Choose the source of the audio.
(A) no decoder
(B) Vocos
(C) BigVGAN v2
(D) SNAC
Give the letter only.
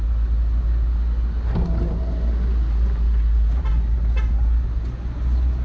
A